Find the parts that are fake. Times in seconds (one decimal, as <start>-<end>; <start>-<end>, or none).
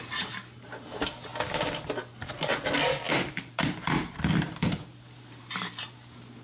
0.0-1.3; 3.1-6.4